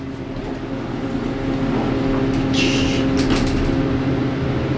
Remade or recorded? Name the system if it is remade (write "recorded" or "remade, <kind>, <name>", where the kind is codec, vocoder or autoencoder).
recorded